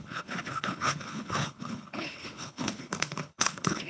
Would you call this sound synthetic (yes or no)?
yes